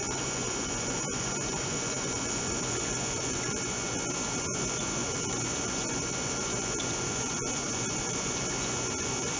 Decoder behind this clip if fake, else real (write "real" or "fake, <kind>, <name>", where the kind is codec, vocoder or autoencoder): fake, vocoder, Vocos